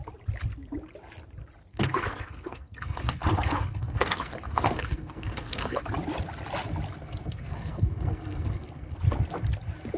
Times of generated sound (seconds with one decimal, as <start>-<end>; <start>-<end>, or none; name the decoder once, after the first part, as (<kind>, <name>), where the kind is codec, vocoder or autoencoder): 1.7-5.8 (codec, SNAC); 7.2-9.0